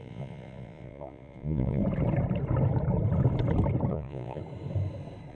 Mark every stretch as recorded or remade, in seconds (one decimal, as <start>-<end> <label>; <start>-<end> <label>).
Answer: 0.0-1.8 remade; 1.8-3.9 recorded; 3.9-4.4 remade; 4.4-5.3 recorded

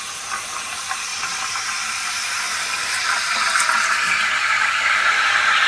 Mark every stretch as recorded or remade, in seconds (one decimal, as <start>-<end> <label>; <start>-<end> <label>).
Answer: 0.0-5.7 recorded

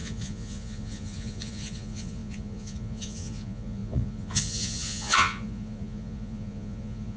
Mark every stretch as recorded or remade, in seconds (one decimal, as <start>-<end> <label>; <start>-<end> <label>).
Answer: 0.0-7.2 remade

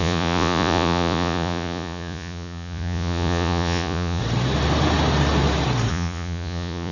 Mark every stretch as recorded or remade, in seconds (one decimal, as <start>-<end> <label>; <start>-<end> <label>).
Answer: 0.0-4.2 remade; 4.2-5.9 recorded; 5.9-6.9 remade

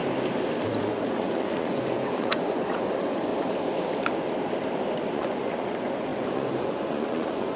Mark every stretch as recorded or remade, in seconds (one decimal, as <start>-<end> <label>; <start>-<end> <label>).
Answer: 0.0-0.7 recorded; 0.7-3.3 remade; 3.3-5.1 recorded; 5.1-7.6 remade

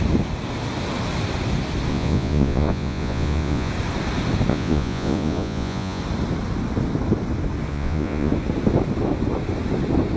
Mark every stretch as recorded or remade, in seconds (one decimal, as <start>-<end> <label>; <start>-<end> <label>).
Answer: 0.0-1.9 recorded; 1.9-3.7 remade; 3.7-4.5 recorded; 4.5-6.0 remade; 6.0-7.7 recorded; 7.7-8.3 remade; 8.3-10.2 recorded

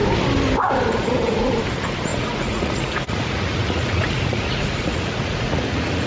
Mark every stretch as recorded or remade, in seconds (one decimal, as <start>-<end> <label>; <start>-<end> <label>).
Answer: 0.0-2.1 recorded; 2.1-6.1 remade

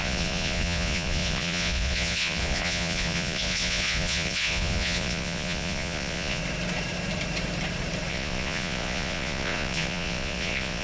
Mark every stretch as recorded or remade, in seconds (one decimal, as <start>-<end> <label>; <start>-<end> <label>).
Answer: 0.0-6.4 remade; 6.4-8.1 recorded; 8.1-10.8 remade